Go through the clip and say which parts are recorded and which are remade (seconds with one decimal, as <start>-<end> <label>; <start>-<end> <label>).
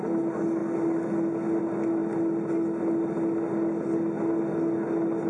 0.0-5.3 recorded